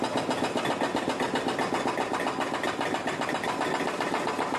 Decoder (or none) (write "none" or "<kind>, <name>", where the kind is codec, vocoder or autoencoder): none